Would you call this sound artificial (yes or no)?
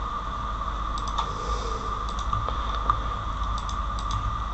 no